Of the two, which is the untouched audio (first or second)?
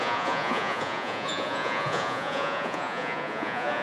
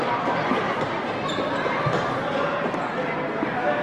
second